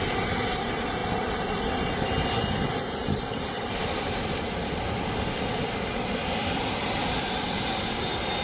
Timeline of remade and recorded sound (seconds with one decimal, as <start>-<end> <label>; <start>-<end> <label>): 0.0-1.0 remade; 1.0-2.9 recorded; 2.9-8.4 remade